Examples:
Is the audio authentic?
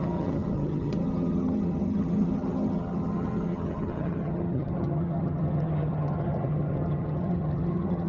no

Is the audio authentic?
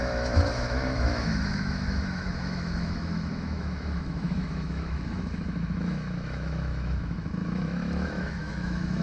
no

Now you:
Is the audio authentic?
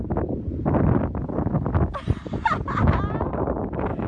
yes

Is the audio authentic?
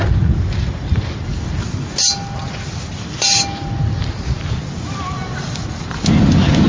yes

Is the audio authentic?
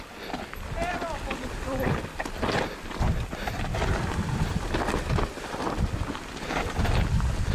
yes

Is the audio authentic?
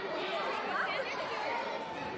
no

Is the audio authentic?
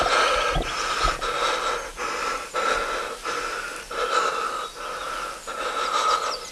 yes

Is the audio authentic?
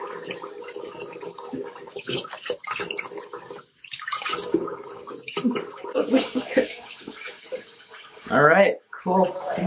no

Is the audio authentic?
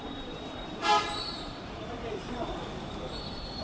no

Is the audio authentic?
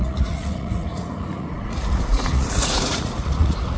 no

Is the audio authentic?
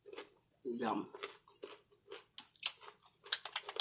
yes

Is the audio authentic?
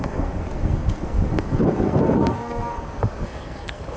no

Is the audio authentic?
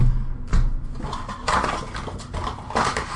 yes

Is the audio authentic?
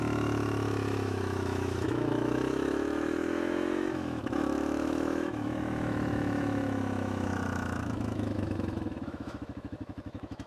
no